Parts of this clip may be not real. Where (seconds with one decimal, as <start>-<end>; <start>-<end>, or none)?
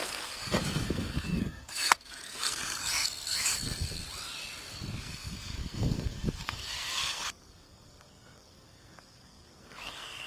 0.0-4.0; 5.0-10.3